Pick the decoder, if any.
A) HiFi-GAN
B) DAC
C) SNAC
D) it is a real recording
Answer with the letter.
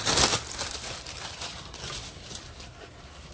D